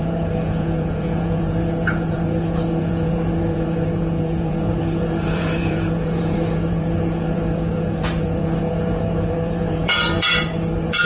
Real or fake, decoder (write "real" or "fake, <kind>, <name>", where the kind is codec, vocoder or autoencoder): fake, vocoder, Vocos